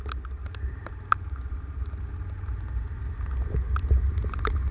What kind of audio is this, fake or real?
real